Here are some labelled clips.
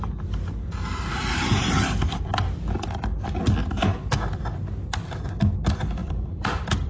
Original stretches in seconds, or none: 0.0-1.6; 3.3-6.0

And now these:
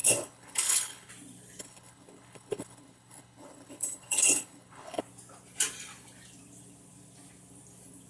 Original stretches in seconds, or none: 1.1-1.6; 5.0-8.1

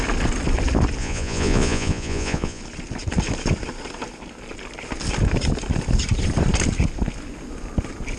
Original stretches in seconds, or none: 0.0-1.0; 2.6-8.2

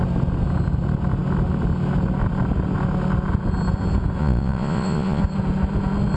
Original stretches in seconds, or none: 0.0-4.2; 5.2-6.2

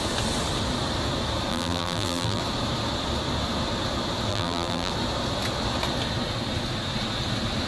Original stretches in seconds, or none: 0.0-1.5; 2.4-4.3; 4.9-7.7